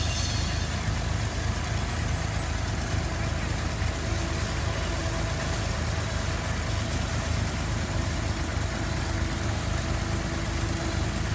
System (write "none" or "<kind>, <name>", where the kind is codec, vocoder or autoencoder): none